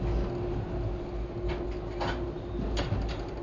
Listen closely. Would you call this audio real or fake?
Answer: real